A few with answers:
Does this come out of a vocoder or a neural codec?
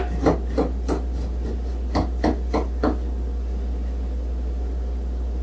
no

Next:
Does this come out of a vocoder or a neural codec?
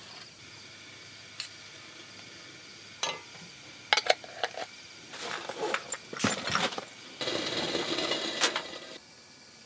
no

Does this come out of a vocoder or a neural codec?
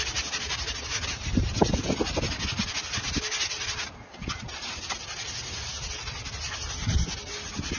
no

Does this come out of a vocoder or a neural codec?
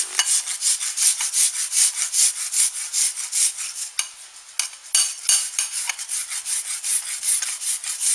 no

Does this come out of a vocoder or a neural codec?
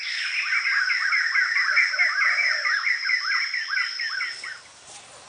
no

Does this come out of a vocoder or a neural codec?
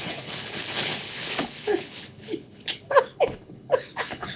yes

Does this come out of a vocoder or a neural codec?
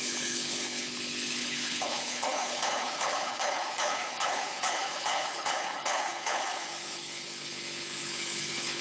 yes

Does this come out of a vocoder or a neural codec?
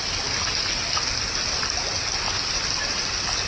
no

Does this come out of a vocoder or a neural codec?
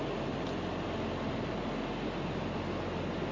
no